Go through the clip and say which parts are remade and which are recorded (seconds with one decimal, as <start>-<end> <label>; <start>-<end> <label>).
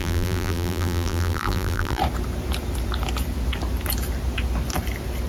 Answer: 0.0-2.0 remade; 2.0-5.3 recorded